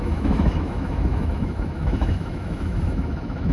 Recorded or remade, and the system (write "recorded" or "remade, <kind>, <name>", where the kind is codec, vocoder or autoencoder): remade, autoencoder, DAC-VAE